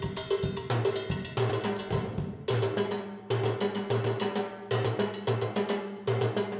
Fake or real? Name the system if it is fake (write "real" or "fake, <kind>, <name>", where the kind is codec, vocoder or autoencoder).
real